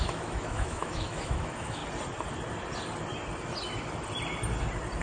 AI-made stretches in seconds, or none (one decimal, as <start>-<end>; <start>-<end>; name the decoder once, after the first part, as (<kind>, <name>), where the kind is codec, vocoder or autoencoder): 0.0-1.8 (autoencoder, DAC-VAE)